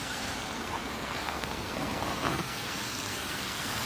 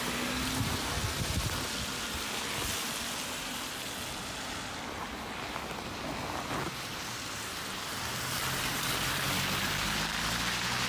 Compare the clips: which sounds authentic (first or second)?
second